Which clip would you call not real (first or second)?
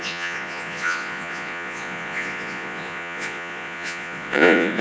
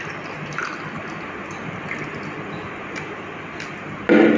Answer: first